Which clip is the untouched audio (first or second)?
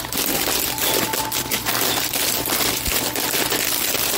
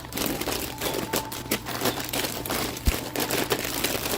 first